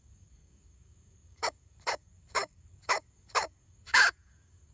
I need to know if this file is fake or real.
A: fake